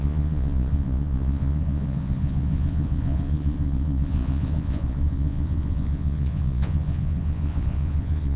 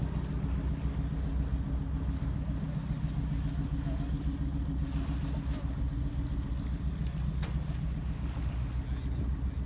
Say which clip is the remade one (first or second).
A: first